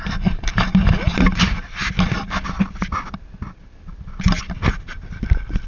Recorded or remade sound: recorded